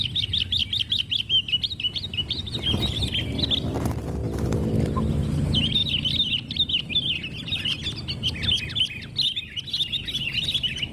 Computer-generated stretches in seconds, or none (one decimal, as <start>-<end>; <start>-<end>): none